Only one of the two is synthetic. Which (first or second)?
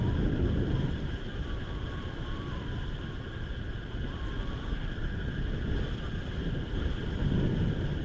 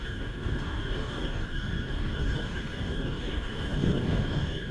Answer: second